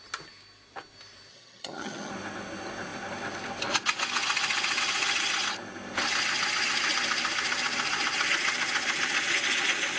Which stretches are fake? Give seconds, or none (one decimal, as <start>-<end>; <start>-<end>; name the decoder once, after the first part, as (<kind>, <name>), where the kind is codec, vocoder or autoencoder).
1.3-2.1 (vocoder, HiFi-GAN)